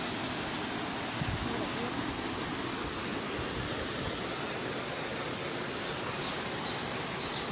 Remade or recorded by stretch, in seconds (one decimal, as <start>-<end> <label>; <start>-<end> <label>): 0.0-7.5 recorded